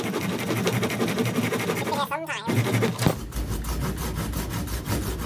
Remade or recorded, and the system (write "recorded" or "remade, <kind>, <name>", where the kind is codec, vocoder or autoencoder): recorded